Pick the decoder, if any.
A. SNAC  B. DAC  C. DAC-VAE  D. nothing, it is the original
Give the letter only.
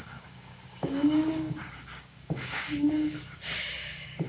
B